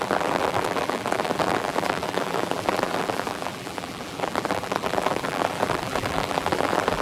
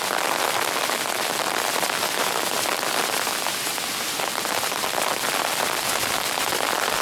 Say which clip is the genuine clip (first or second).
second